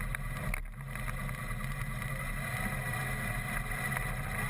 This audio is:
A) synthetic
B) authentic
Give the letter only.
B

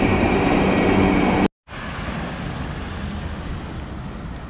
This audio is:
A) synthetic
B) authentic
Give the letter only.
B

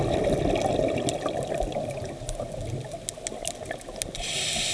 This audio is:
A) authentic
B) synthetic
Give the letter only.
A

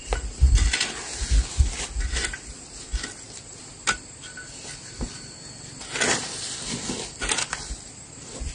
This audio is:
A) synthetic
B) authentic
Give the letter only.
B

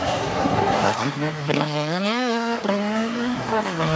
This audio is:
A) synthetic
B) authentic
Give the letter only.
A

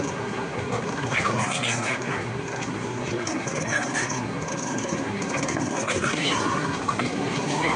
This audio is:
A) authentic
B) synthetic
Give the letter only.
B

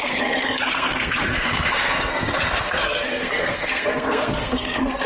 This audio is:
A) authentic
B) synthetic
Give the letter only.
B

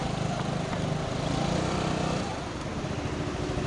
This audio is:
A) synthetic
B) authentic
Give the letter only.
B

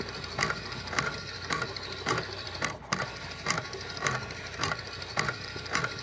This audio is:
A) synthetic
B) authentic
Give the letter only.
B